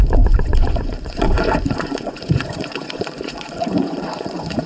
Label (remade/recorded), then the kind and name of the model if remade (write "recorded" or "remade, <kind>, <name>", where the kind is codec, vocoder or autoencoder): remade, vocoder, Vocos